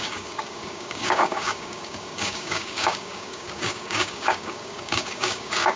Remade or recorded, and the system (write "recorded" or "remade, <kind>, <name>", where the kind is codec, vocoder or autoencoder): remade, codec, DAC